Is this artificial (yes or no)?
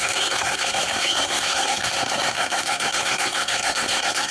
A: yes